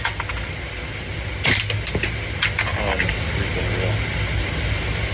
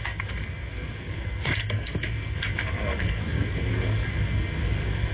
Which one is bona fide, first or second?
first